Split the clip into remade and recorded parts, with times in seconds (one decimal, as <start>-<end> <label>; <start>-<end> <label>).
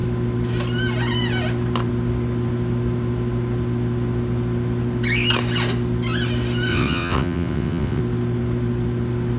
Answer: 0.0-6.7 recorded; 6.7-8.0 remade; 8.0-9.4 recorded